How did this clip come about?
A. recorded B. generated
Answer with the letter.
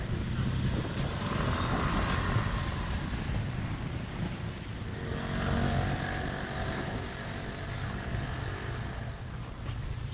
A